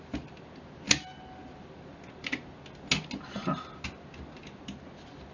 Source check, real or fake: real